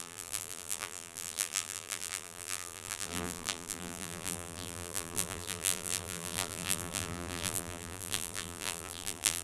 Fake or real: fake